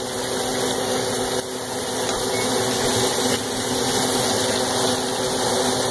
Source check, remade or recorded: recorded